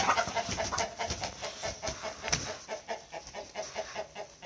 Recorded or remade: recorded